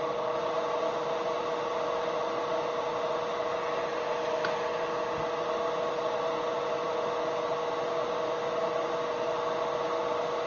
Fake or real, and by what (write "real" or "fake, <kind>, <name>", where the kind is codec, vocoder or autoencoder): real